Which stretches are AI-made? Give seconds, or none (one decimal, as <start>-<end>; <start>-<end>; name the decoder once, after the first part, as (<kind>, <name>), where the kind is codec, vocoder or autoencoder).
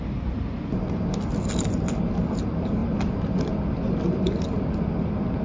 none